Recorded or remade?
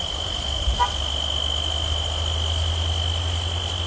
recorded